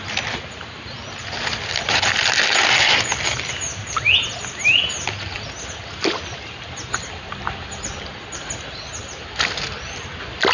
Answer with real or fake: real